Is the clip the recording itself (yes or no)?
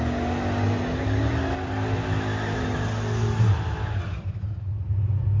yes